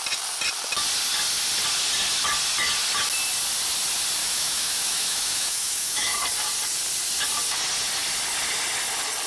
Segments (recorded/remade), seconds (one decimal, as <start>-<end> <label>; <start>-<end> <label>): 0.0-4.2 recorded; 4.2-6.2 remade; 6.2-9.3 recorded